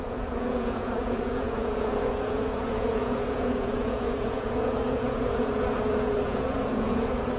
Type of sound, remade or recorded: remade